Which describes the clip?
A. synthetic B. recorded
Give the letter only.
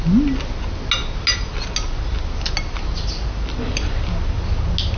B